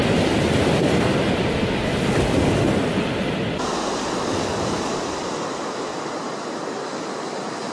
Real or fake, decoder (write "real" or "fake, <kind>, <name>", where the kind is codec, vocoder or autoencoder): real